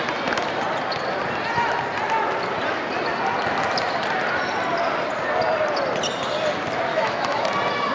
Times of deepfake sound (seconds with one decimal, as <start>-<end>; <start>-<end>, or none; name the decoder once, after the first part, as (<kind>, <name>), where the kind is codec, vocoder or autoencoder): 6.9-7.4 (autoencoder, DAC-VAE)

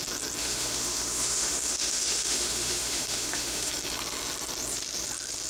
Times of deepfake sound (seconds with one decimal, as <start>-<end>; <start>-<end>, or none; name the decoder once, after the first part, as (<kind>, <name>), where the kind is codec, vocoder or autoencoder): 0.4-3.7 (autoencoder, DAC-VAE)

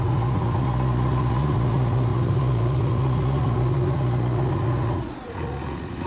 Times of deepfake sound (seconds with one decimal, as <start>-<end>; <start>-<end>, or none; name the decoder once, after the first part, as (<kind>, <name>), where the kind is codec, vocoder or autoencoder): 0.0-6.1 (vocoder, Vocos)

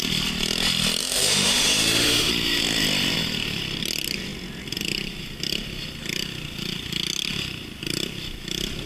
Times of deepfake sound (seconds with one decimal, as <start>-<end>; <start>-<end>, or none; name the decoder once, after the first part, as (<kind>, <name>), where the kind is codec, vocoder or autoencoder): 1.0-2.3 (autoencoder, DAC-VAE)

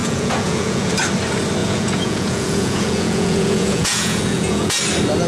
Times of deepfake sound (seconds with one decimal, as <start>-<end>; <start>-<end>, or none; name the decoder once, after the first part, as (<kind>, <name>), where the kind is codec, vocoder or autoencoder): 0.0-0.9 (vocoder, Vocos); 1.6-4.8

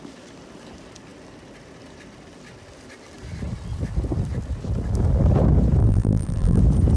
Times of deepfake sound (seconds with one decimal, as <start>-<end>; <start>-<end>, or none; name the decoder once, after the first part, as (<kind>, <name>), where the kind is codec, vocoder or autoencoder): 5.8-6.6 (vocoder, BigVGAN v2)